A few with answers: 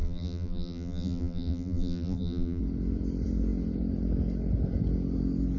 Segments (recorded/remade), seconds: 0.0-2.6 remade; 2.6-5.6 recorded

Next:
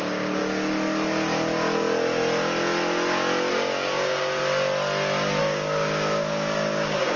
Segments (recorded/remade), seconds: 0.0-0.4 remade; 0.4-3.5 recorded; 3.5-4.4 remade; 4.4-5.4 recorded; 5.4-7.2 remade

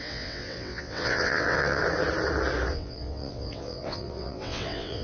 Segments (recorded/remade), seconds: 0.0-1.8 remade; 1.8-2.7 recorded; 2.7-5.0 remade

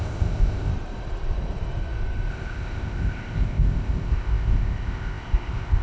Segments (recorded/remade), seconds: 0.0-0.7 remade; 0.7-2.3 recorded; 2.3-5.8 remade

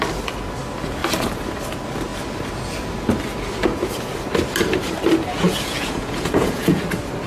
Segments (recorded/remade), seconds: 0.0-5.3 recorded; 5.3-6.8 remade; 6.8-7.3 recorded

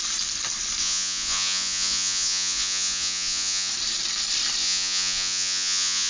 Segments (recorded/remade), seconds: 0.0-0.8 recorded; 0.8-3.7 remade; 3.7-4.6 recorded; 4.6-6.1 remade